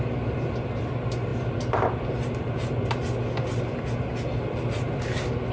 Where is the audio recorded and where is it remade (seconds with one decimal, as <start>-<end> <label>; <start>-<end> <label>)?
0.0-5.5 recorded